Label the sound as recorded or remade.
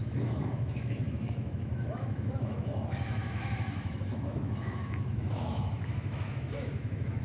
remade